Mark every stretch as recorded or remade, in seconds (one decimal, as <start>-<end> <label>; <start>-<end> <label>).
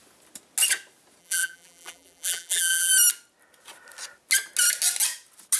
0.0-1.2 recorded; 1.2-2.9 remade; 2.9-5.6 recorded